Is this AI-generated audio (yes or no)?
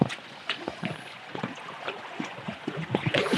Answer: yes